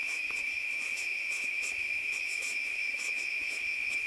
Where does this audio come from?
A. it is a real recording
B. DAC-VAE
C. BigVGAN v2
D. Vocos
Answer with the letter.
B